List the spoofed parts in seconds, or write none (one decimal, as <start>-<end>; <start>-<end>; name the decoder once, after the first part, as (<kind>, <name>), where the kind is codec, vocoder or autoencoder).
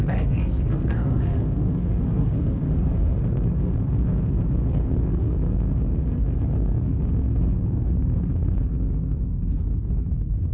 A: 0.0-10.5 (codec, SNAC)